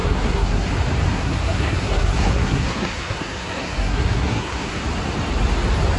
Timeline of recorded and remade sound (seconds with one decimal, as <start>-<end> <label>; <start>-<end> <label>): 0.0-0.7 remade; 0.7-1.1 recorded; 1.1-4.7 remade; 4.7-6.0 recorded